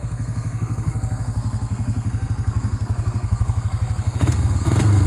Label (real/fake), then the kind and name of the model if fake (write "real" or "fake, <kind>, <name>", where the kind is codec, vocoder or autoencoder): fake, codec, SNAC